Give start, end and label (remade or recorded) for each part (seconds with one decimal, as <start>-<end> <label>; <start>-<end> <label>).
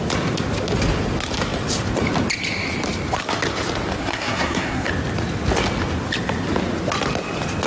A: 0.0-4.0 recorded; 4.0-4.9 remade; 4.9-7.7 recorded